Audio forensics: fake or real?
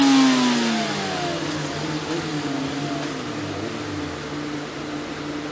real